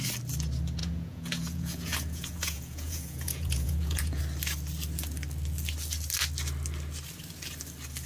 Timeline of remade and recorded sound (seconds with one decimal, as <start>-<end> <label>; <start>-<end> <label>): 0.0-0.8 recorded; 0.8-4.2 remade; 4.2-8.1 recorded